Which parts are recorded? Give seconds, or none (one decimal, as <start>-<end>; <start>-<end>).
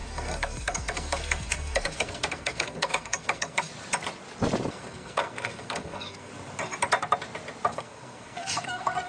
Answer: 3.7-4.7; 6.3-7.7